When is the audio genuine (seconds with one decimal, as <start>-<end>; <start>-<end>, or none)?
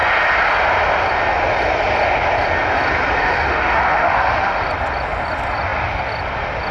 0.0-3.2; 4.6-6.7